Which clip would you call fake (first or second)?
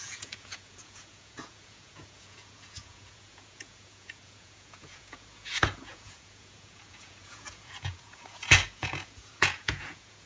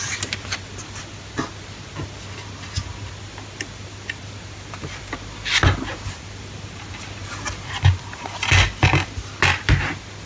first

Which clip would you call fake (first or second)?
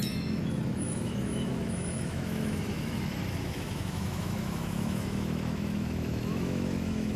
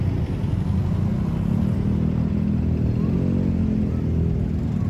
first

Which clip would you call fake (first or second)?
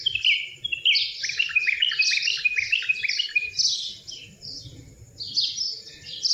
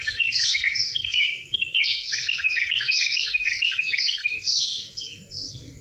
second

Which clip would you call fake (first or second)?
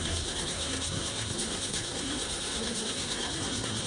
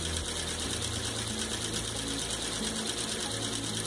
first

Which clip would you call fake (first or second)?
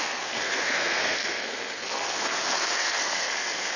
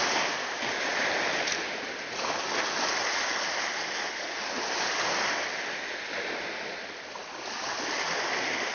first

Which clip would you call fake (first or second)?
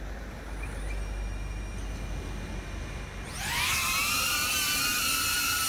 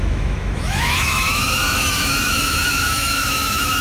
second